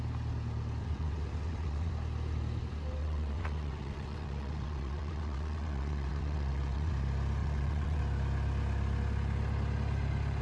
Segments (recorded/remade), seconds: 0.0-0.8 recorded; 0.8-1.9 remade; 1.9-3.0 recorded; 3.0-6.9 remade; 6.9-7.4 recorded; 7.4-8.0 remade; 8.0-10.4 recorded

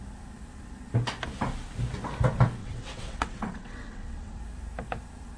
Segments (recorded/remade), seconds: 0.0-2.6 recorded; 2.6-4.4 remade; 4.4-5.4 recorded

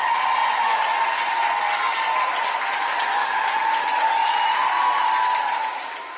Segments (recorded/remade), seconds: 0.0-6.2 recorded